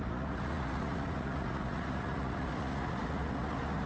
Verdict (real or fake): fake